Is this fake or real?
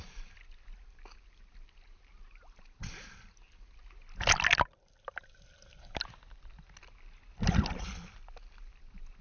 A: real